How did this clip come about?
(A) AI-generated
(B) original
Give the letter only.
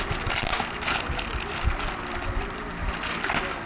B